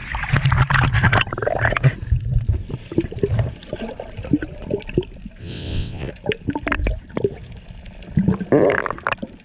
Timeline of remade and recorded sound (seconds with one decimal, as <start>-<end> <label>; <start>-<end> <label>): 0.0-5.4 recorded; 5.4-6.1 remade; 6.1-9.4 recorded